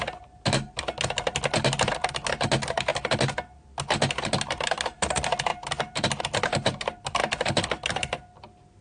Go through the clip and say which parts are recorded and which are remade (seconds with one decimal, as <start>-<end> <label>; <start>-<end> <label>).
0.0-8.8 recorded